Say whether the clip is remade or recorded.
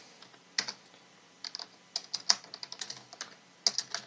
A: recorded